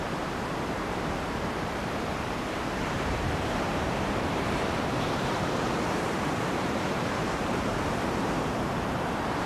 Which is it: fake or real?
fake